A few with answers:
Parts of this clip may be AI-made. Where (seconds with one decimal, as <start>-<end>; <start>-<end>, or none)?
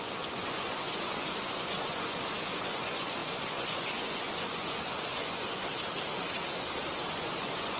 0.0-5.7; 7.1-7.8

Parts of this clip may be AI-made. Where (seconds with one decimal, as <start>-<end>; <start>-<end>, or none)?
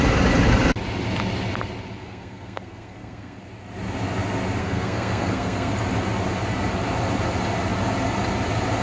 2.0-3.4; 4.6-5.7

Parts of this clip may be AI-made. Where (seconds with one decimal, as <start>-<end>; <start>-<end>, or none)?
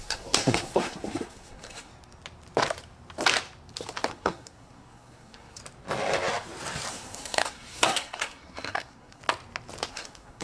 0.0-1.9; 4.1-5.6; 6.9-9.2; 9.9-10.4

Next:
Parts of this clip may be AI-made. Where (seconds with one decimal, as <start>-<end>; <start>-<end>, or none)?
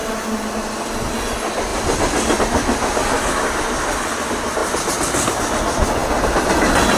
none